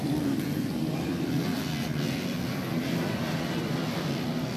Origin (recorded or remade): remade